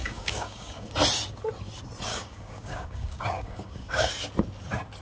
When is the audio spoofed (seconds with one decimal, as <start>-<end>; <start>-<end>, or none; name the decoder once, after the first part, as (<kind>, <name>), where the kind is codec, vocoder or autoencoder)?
0.0-0.9 (codec, DAC); 2.1-4.1